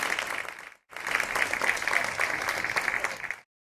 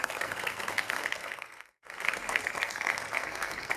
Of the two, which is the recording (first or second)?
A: first